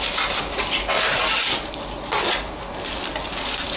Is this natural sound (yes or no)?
yes